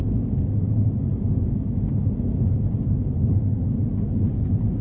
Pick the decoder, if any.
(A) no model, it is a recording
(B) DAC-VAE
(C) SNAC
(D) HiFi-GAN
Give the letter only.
A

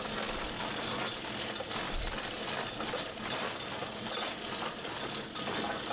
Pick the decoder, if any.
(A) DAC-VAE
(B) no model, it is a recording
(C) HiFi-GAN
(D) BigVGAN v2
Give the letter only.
B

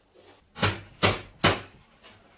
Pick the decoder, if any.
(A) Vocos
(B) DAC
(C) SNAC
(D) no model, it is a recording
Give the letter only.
D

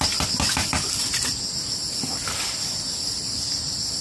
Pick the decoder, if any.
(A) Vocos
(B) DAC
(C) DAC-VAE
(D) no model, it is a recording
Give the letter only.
D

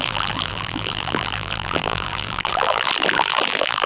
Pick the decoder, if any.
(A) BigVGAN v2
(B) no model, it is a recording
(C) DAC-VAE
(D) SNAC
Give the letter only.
A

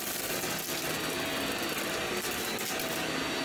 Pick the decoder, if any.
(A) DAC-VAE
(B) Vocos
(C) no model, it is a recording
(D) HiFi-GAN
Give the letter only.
C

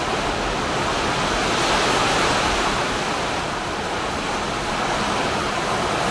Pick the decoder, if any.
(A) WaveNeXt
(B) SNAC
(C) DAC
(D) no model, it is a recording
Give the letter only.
D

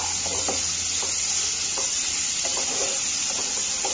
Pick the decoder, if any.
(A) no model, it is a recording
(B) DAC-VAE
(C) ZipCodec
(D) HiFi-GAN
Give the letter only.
A